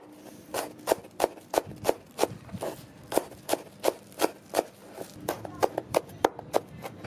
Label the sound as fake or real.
real